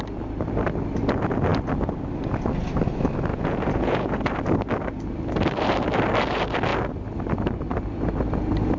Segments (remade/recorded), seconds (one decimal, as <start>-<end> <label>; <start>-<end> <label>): 0.0-3.3 recorded; 3.3-4.2 remade; 4.2-8.8 recorded